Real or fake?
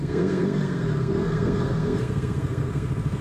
fake